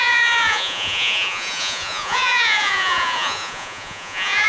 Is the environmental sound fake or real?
fake